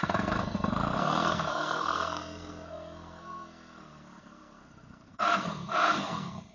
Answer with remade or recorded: remade